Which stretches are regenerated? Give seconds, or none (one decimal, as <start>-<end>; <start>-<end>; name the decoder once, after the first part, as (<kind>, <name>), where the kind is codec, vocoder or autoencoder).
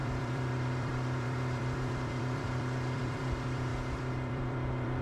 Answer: 0.0-5.0 (vocoder, BigVGAN v2)